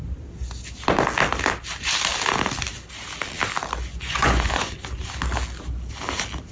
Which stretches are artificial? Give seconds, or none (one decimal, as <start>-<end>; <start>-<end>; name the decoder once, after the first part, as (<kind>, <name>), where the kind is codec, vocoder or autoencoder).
3.9-4.7 (vocoder, Vocos)